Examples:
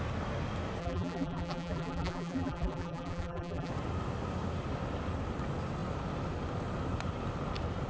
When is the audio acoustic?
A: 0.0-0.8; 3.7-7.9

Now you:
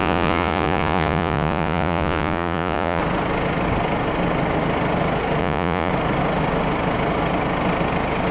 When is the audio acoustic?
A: 3.0-5.4; 5.9-8.3

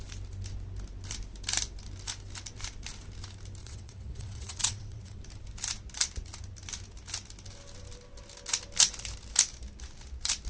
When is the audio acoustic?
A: 0.0-3.6; 5.2-10.5

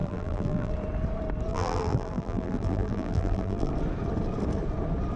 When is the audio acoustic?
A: 0.7-1.5; 3.7-5.2

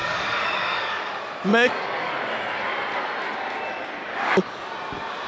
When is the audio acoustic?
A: 1.1-1.5; 2.1-4.0; 4.6-5.3